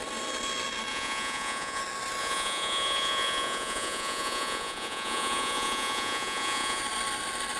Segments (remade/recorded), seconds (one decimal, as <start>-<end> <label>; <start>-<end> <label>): 0.0-0.9 recorded; 0.9-1.8 remade; 1.8-2.2 recorded; 2.2-6.8 remade; 6.8-7.6 recorded